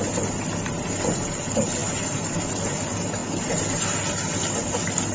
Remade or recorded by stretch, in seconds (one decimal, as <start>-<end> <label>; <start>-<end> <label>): 0.0-5.1 recorded

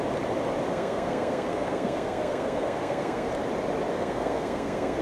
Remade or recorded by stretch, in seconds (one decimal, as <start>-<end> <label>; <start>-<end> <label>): 0.0-0.7 recorded; 0.7-3.3 remade; 3.3-3.9 recorded; 3.9-5.0 remade